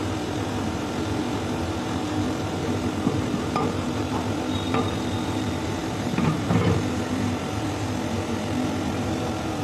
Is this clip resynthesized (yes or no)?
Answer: yes